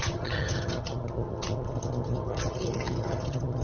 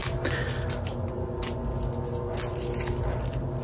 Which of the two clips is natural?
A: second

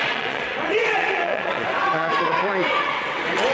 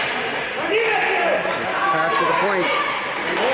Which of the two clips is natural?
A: second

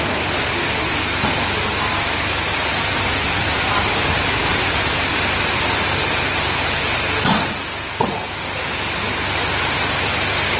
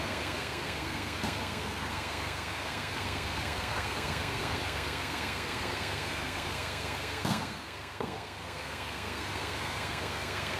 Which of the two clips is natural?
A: first